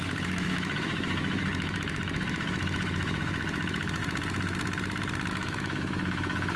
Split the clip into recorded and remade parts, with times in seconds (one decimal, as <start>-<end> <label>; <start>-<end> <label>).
0.0-4.0 remade; 4.0-5.3 recorded; 5.3-6.6 remade